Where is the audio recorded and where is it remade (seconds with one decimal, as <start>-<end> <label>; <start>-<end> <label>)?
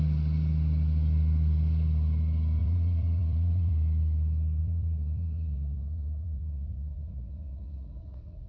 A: 0.0-2.6 recorded; 2.6-3.7 remade; 3.7-4.6 recorded; 4.6-8.5 remade